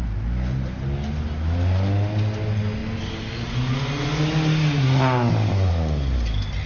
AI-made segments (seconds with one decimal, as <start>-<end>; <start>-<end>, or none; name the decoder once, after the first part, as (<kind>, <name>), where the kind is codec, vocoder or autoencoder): none